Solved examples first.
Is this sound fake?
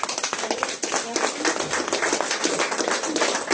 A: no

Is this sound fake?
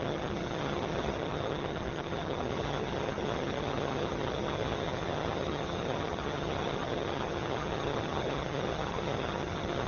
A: yes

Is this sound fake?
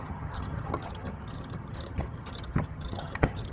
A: yes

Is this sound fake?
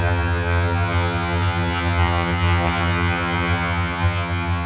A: yes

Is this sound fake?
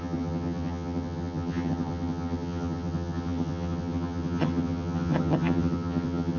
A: yes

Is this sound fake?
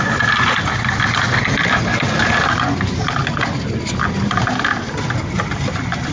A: no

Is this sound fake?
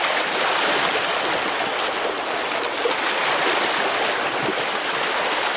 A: no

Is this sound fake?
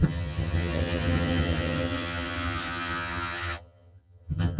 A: yes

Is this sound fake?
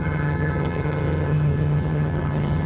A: yes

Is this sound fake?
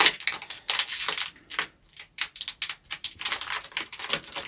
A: no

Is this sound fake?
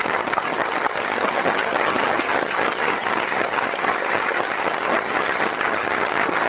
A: yes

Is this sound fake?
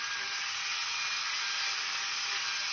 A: no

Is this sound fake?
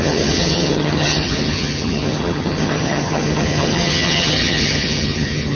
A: yes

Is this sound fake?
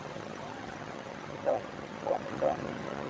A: yes